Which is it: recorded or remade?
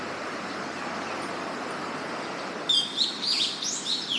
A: recorded